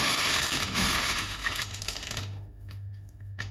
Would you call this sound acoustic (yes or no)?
no